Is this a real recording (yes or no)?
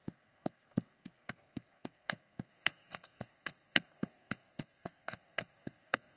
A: no